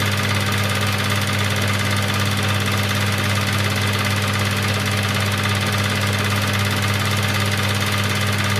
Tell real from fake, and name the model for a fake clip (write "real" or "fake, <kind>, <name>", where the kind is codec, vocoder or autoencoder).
real